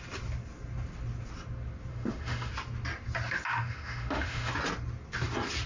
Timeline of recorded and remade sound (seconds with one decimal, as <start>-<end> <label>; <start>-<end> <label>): 0.0-1.9 recorded; 1.9-2.5 remade; 2.5-3.6 recorded; 3.6-4.5 remade; 4.5-5.7 recorded